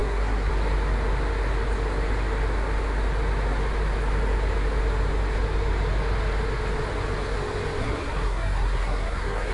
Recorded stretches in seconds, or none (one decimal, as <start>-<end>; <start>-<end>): 0.5-7.8